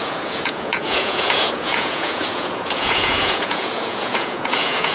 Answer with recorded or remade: remade